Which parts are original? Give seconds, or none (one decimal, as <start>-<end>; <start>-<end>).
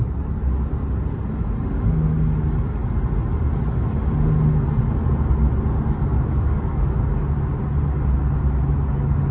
0.0-6.1; 6.9-9.3